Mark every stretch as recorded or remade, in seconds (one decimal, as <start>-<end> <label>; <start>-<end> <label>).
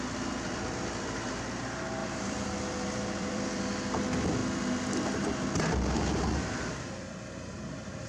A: 0.0-2.0 recorded; 2.0-3.6 remade; 3.6-8.1 recorded